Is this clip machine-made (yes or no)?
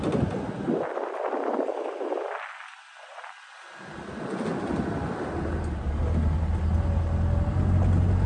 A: no